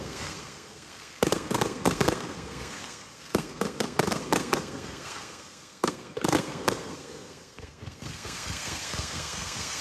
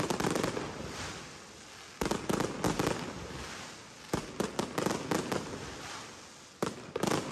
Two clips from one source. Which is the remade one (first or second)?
first